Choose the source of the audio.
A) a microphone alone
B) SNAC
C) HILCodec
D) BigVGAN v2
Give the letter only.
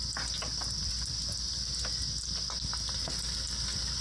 A